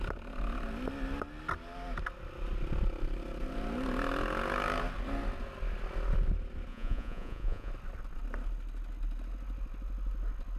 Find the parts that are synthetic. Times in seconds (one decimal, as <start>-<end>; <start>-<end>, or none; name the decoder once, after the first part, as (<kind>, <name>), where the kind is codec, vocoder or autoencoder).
6.7-7.7 (vocoder, Vocos)

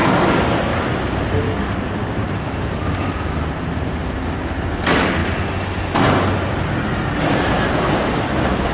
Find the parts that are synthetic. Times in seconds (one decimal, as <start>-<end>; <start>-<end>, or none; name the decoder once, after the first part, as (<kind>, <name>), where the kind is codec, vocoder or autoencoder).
none

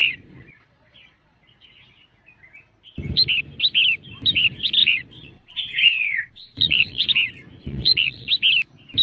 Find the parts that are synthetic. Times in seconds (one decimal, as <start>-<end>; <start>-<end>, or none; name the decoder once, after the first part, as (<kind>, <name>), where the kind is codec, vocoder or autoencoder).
0.0-1.4 (vocoder, Vocos); 4.8-7.1; 7.6-8.3

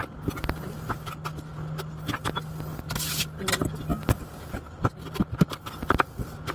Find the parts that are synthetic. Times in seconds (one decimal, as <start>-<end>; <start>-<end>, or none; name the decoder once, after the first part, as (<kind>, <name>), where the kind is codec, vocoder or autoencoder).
none

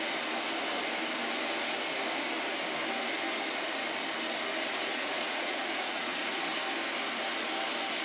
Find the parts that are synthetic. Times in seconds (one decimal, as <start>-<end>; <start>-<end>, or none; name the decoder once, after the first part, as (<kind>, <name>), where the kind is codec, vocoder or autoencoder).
4.9-6.4 (vocoder, Vocos)

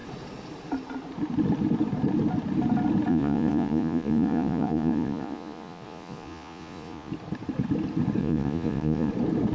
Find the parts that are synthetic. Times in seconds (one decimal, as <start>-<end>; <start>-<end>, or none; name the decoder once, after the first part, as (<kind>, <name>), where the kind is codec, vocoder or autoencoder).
3.1-7.1 (vocoder, Vocos); 8.2-9.1

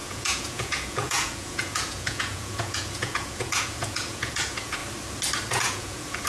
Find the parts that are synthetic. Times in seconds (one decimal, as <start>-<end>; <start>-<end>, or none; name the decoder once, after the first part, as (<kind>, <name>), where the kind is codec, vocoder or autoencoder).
0.0-4.8 (vocoder, Vocos); 5.5-6.3